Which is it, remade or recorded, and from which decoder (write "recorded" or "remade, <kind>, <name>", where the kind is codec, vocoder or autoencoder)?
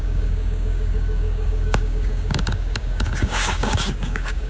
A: remade, codec, DAC